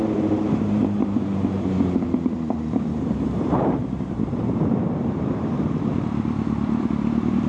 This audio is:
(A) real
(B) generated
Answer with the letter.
B